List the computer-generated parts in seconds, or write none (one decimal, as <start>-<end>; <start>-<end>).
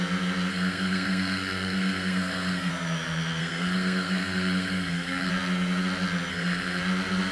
0.5-2.7; 3.4-5.3; 6.3-6.8